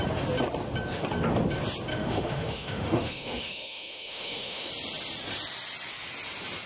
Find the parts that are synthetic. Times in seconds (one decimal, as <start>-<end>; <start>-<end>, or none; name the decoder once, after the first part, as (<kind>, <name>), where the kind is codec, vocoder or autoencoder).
1.9-4.7 (autoencoder, DAC-VAE)